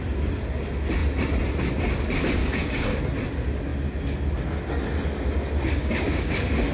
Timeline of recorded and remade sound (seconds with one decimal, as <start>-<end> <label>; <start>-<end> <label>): 0.0-2.4 recorded; 2.4-3.0 remade; 3.0-5.8 recorded; 5.8-6.3 remade; 6.3-6.7 recorded